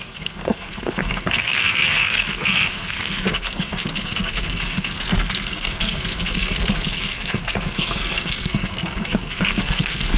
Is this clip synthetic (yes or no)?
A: yes